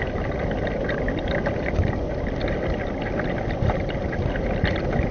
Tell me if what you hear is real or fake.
real